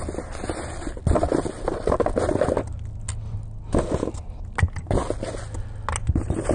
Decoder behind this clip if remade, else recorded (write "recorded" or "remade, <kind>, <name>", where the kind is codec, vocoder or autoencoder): recorded